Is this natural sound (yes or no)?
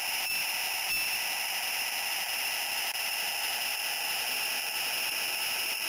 yes